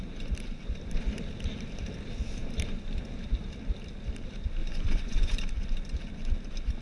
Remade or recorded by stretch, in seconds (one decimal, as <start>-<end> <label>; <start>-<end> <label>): 0.0-4.6 recorded; 4.6-5.4 remade; 5.4-6.8 recorded